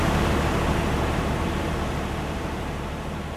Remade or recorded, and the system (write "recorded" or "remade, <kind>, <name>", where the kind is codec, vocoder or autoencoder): remade, vocoder, BigVGAN v2